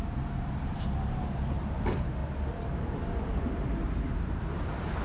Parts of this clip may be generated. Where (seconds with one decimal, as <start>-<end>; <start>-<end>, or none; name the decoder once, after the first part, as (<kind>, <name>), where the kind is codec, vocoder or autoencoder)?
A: 0.0-2.2 (vocoder, BigVGAN v2); 3.3-5.0